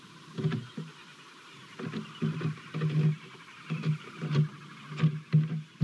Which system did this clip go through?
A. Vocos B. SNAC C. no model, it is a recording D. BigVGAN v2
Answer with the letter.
C